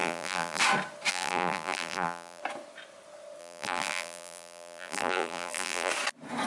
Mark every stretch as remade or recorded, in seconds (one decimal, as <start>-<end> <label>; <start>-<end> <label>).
0.0-0.6 remade; 0.6-1.1 recorded; 1.1-2.4 remade; 2.4-3.4 recorded; 3.4-5.9 remade; 5.9-6.5 recorded